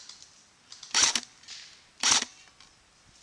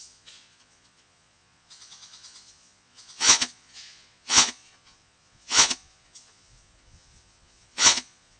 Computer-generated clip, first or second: second